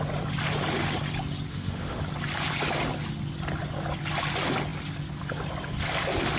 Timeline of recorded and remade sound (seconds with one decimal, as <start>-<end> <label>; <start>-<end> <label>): 0.0-1.5 recorded; 1.5-2.0 remade; 2.0-6.4 recorded